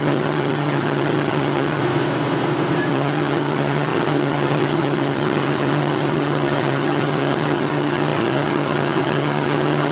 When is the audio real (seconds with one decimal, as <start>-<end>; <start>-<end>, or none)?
1.8-2.9